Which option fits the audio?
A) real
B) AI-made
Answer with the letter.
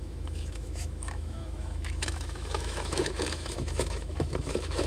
B